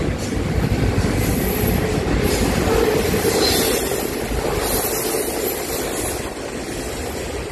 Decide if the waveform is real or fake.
real